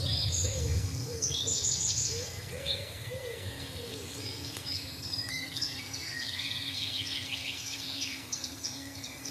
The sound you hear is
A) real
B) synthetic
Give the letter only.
B